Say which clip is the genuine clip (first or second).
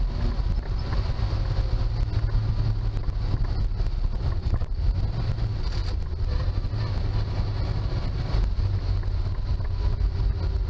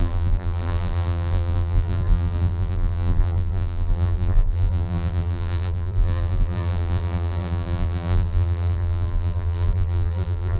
first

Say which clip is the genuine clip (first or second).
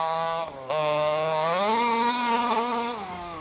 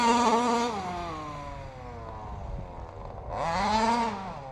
second